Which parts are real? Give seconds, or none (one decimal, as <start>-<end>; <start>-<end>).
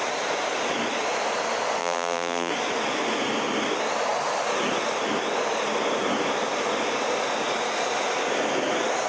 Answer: 0.0-1.8; 2.5-9.1